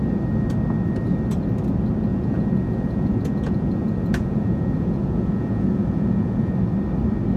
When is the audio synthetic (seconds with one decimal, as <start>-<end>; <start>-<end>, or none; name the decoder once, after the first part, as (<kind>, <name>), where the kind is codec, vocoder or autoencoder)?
2.1-6.5 (vocoder, Vocos)

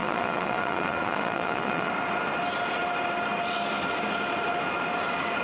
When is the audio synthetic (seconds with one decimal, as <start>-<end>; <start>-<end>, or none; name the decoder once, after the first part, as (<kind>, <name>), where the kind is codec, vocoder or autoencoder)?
0.0-1.9 (vocoder, Vocos)